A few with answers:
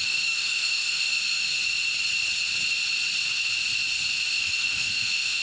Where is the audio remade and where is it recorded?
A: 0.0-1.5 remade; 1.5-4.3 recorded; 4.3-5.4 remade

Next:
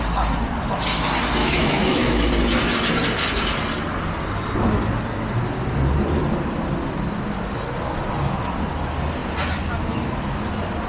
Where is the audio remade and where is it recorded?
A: 0.0-1.4 recorded; 1.4-2.3 remade; 2.3-10.9 recorded

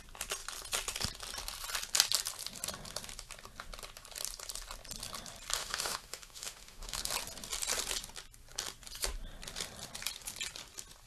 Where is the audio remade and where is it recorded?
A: 0.0-5.6 recorded; 5.6-7.1 remade; 7.1-11.1 recorded

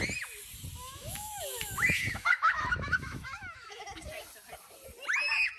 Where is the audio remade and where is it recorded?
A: 0.0-0.8 recorded; 0.8-3.8 remade; 3.8-5.6 recorded

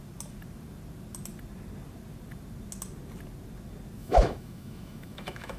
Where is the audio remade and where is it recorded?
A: 0.0-4.0 recorded; 4.0-5.6 remade

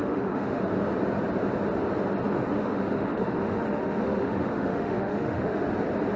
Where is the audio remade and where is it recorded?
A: 0.0-0.6 remade; 0.6-2.3 recorded; 2.3-5.7 remade; 5.7-6.2 recorded

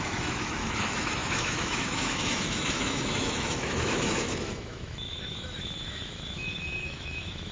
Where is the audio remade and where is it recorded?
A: 0.0-7.5 remade

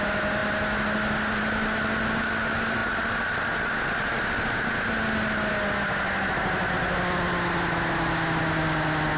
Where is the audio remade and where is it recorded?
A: 0.0-9.2 recorded